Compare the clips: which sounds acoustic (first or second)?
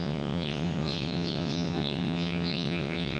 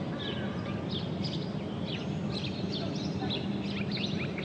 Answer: second